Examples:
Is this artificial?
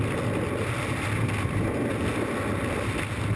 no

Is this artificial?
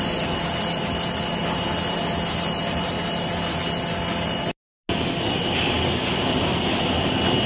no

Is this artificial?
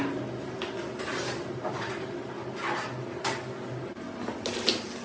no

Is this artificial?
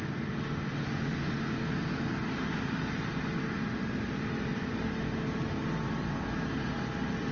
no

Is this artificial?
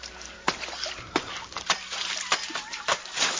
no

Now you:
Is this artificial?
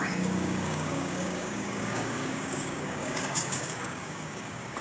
yes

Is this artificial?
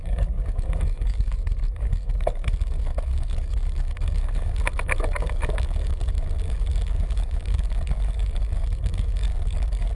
yes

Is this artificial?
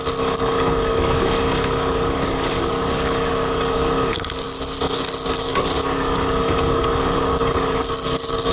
yes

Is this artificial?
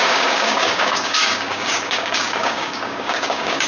yes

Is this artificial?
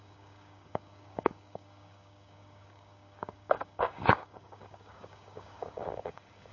yes